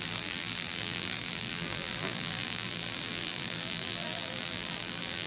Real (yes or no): no